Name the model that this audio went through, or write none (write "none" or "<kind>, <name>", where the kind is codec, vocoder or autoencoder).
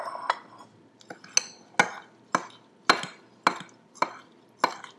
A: none